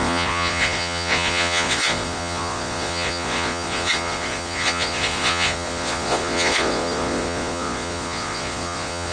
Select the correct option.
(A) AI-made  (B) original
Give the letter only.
A